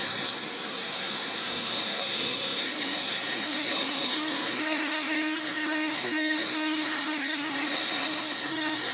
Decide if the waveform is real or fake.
fake